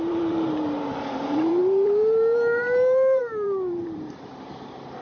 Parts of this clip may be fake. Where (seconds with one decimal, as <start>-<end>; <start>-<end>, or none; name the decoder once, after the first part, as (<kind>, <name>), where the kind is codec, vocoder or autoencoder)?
0.0-5.0 (vocoder, BigVGAN v2)